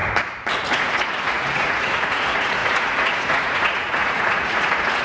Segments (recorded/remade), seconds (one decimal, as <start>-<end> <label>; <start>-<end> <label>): 0.0-0.6 recorded; 0.6-5.0 remade